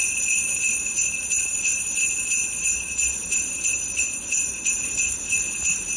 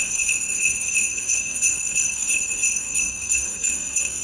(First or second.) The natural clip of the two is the first